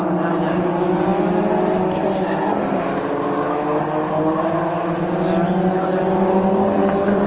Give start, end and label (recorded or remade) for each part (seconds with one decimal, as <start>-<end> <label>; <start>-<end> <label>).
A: 0.0-5.8 recorded; 5.8-6.3 remade; 6.3-7.3 recorded